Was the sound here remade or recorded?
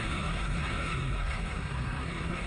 remade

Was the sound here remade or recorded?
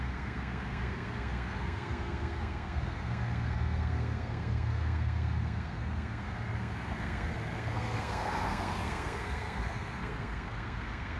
remade